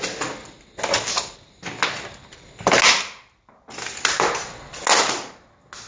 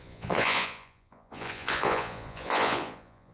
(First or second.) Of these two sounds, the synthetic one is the second